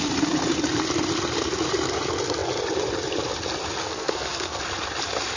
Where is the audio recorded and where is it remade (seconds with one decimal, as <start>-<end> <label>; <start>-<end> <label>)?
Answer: 0.0-3.8 recorded; 3.8-4.6 remade; 4.6-5.4 recorded